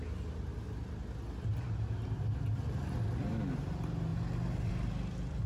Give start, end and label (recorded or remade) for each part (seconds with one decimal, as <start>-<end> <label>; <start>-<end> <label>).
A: 0.0-5.5 recorded